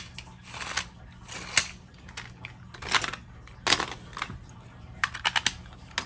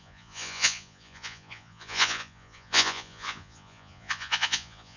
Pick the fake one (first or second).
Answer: second